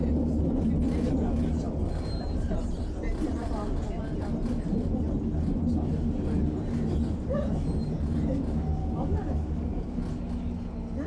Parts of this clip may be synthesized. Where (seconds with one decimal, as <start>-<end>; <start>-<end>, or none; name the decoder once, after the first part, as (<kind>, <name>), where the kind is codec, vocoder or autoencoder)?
8.8-10.0 (codec, DAC)